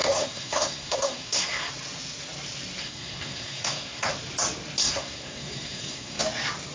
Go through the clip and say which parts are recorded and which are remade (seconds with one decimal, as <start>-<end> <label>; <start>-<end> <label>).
0.0-1.7 remade; 1.7-2.8 recorded; 2.8-4.1 remade; 4.1-4.8 recorded; 4.8-6.2 remade; 6.2-6.7 recorded